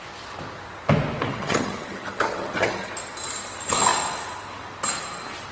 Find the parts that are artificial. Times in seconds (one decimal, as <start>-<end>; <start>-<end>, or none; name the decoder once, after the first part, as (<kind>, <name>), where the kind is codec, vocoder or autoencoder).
1.3-2.9 (vocoder, HiFi-GAN)